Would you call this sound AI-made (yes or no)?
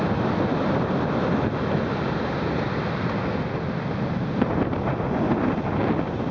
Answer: no